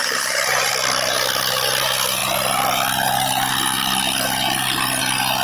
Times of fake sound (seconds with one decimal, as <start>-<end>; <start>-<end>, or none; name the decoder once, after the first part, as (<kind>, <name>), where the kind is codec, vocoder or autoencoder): 0.0-0.7 (vocoder, BigVGAN v2)